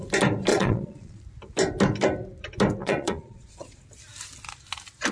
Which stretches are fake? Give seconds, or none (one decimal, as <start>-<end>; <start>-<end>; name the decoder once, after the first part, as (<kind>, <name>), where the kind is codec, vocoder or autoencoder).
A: 0.5-1.2 (vocoder, Vocos); 2.8-3.8